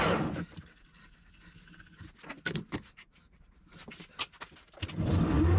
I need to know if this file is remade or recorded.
recorded